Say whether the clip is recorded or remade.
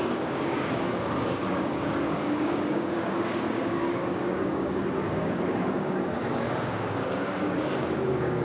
remade